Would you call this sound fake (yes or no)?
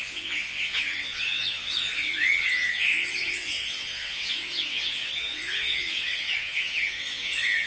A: yes